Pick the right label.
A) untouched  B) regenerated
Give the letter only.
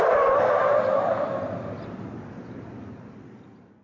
A